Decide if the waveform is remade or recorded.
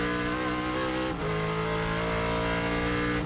recorded